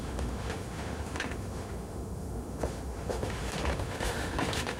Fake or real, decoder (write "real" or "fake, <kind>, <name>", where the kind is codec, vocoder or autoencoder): fake, autoencoder, DAC-VAE